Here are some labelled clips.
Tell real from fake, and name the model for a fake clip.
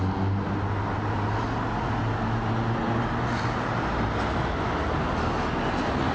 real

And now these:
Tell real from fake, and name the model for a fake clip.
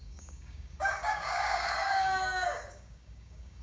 fake, codec, DAC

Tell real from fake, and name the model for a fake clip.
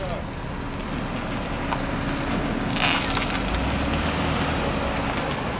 real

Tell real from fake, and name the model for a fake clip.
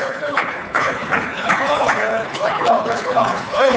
fake, codec, HILCodec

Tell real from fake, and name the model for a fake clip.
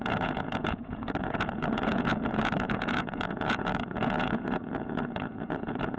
fake, vocoder, Vocos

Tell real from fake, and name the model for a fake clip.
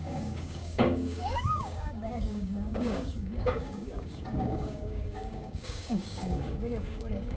fake, codec, DAC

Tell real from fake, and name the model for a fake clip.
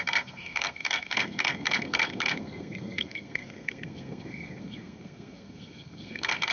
fake, codec, SNAC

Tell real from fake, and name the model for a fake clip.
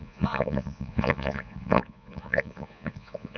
fake, vocoder, Vocos